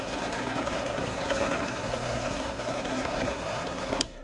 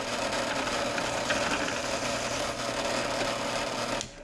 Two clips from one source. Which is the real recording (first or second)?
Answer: second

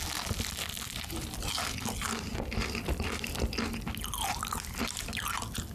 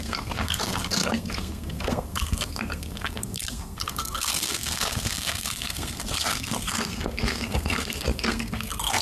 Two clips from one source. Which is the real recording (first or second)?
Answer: first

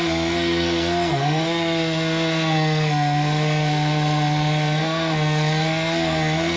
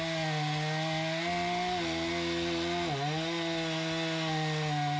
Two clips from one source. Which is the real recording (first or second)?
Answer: second